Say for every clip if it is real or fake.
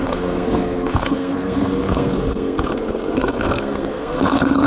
fake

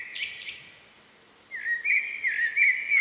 real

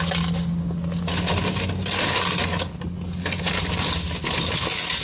real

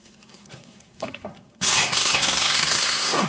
fake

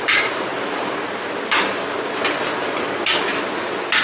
real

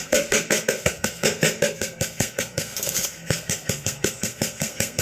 fake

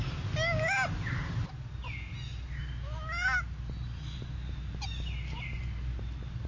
real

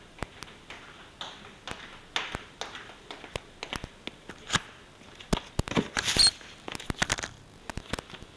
real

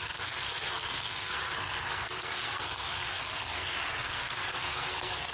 fake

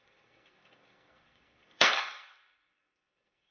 fake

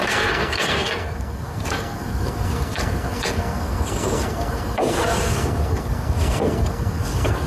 fake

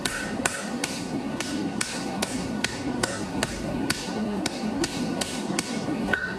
fake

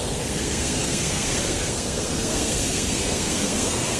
fake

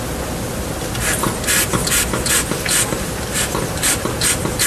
real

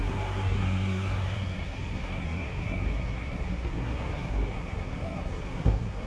fake